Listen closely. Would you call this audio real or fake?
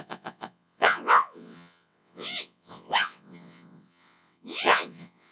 fake